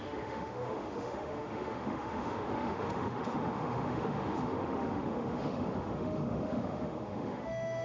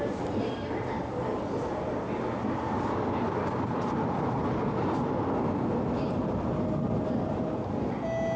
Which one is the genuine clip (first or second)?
second